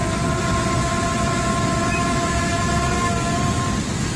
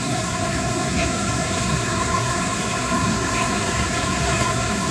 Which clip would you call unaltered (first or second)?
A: first